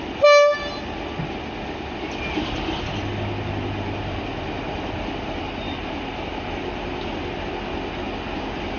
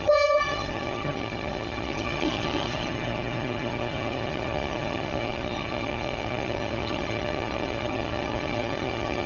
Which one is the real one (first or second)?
first